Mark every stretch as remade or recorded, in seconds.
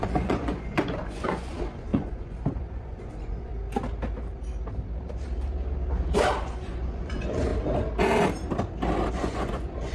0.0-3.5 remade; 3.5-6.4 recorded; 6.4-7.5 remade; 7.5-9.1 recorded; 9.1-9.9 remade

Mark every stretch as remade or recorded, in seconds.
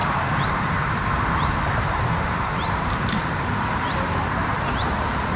0.0-3.2 remade; 3.2-4.4 recorded; 4.4-5.4 remade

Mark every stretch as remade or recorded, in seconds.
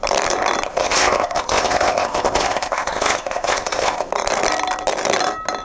0.0-0.7 recorded; 0.7-4.1 remade; 4.1-5.6 recorded